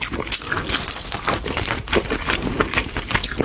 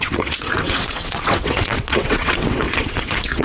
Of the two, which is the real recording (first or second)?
first